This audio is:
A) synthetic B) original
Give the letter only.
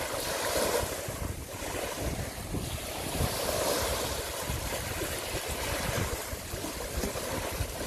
A